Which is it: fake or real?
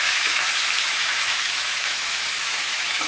fake